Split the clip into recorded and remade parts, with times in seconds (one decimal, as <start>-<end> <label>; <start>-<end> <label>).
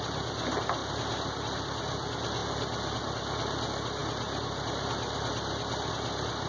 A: 0.0-0.8 recorded; 0.8-1.6 remade; 1.6-6.5 recorded